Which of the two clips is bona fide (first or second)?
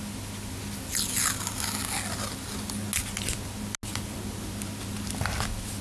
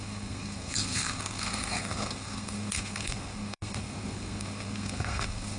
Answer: first